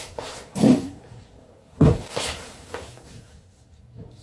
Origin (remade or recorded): remade